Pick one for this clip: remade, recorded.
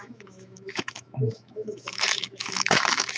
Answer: remade